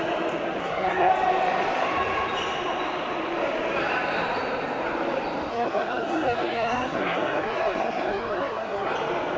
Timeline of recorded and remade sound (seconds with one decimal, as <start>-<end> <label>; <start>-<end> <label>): 0.0-0.6 recorded; 0.6-1.1 remade; 1.1-5.5 recorded; 5.5-8.9 remade; 8.9-9.4 recorded